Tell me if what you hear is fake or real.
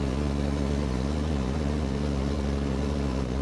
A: fake